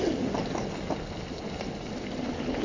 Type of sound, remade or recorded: recorded